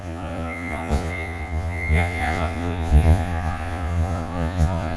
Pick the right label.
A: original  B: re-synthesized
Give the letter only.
B